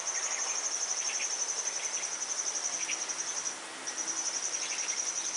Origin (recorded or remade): recorded